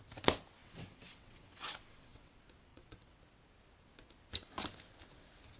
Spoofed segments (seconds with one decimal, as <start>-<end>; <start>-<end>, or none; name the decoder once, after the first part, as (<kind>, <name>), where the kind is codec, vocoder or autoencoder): 0.6-2.3 (vocoder, WaveNeXt); 2.7-3.2